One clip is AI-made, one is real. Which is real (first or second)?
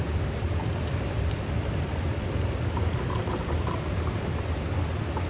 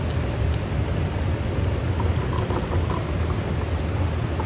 second